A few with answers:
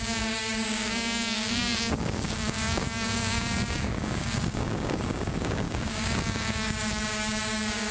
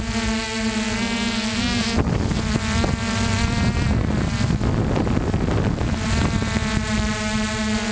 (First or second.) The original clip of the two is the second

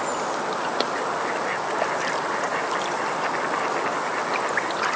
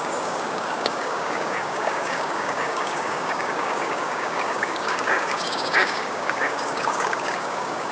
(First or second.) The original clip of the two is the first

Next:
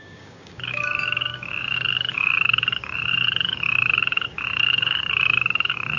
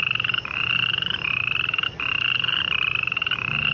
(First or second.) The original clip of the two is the second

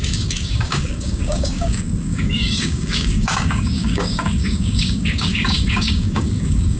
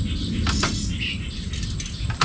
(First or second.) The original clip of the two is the second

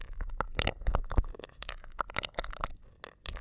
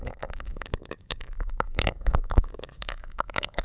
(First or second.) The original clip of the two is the first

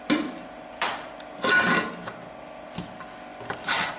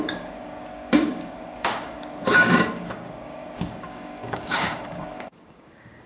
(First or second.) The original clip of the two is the first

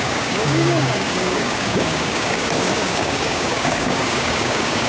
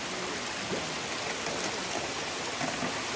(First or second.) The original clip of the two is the second